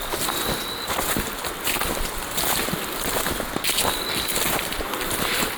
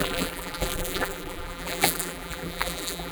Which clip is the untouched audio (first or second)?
first